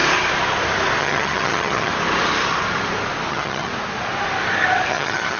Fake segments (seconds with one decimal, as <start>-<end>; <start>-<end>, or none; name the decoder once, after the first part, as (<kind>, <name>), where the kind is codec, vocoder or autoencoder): 1.0-1.9 (vocoder, HiFi-GAN); 3.3-3.7; 4.9-5.4